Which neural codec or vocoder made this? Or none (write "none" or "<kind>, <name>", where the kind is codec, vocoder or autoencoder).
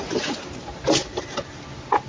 none